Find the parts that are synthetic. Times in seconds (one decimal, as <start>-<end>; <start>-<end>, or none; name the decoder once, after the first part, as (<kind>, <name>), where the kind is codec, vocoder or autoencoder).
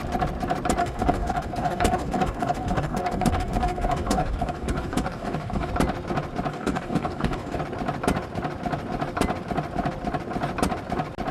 0.8-5.7 (codec, DAC); 6.5-7.6